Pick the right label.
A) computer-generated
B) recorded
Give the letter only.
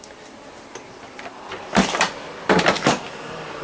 A